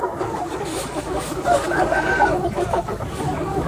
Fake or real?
fake